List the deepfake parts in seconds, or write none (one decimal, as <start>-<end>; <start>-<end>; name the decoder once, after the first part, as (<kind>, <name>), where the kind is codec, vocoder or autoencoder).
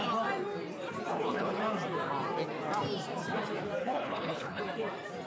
1.1-1.6 (codec, HILCodec); 3.8-4.6